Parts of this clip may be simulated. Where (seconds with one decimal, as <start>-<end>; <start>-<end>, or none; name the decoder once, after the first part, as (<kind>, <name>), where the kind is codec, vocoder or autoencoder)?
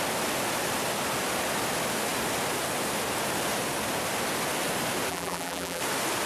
5.1-5.8 (vocoder, BigVGAN v2)